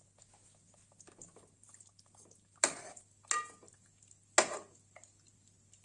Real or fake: real